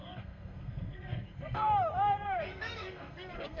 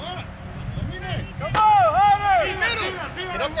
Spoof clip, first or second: first